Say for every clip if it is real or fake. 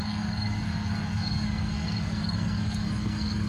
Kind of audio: fake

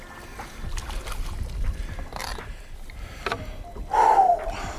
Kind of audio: real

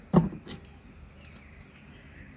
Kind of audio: real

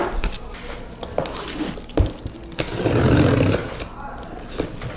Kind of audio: real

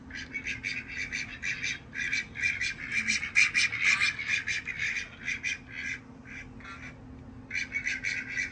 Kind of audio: real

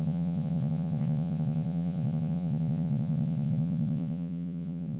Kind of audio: fake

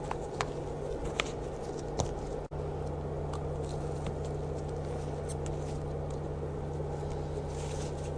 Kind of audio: real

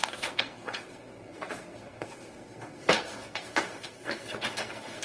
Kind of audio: fake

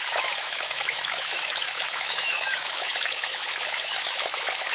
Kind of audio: fake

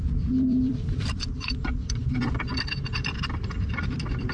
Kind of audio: fake